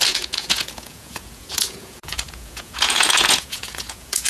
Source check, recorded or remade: remade